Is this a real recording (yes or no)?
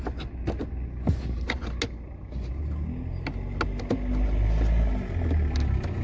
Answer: yes